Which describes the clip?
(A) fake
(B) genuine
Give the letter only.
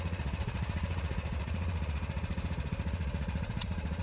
A